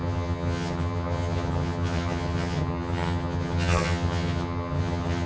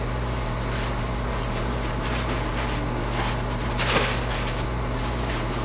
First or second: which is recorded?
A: second